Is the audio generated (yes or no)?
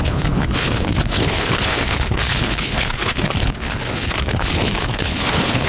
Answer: yes